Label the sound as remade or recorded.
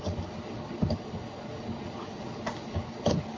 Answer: recorded